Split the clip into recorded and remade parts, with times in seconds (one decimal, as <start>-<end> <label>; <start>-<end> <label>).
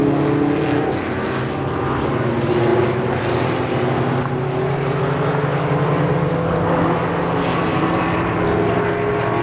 0.0-7.7 recorded; 7.7-8.4 remade; 8.4-9.4 recorded